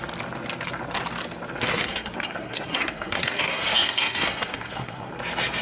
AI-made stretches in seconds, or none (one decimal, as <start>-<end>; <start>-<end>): 1.7-5.1